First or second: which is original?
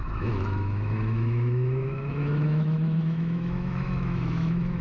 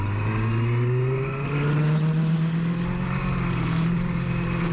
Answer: second